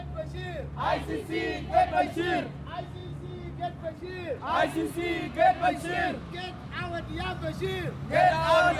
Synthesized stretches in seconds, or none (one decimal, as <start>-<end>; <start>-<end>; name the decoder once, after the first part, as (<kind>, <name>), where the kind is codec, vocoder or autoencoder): 6.0-6.7 (autoencoder, DAC-VAE)